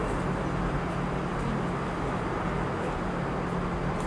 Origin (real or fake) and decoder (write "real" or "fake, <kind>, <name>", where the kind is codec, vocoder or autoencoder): real